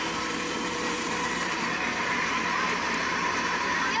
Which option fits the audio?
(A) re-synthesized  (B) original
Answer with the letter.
A